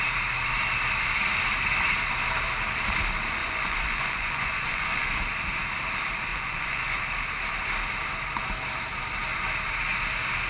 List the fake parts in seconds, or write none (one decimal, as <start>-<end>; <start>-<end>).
3.4-5.2; 6.3-7.0